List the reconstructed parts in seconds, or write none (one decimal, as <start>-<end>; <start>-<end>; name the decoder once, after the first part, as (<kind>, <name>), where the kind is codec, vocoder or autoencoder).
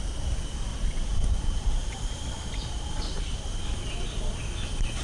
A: 0.7-3.2 (vocoder, BigVGAN v2)